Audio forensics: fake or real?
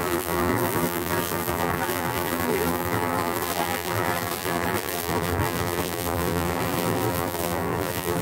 fake